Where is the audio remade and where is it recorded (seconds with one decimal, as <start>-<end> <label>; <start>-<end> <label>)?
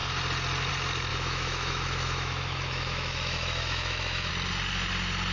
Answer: 0.0-1.1 recorded; 1.1-4.3 remade; 4.3-5.3 recorded